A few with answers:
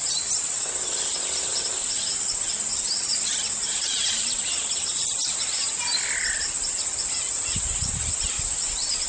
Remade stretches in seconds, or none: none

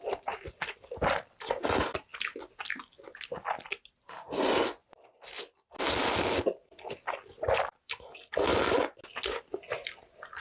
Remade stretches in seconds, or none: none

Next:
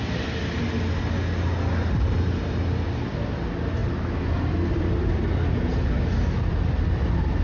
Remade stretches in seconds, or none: none

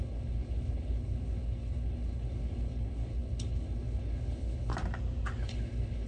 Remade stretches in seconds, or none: 0.0-4.7; 5.4-6.1

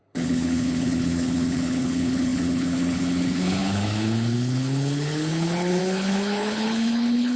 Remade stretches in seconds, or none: 0.0-7.4

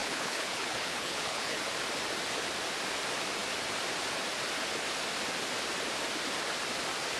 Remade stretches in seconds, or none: 0.0-1.6